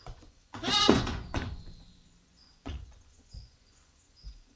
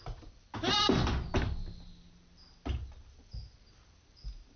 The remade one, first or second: first